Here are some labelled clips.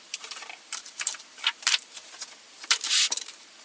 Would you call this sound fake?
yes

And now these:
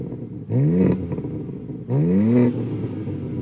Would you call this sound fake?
no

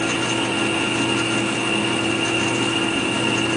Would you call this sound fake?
no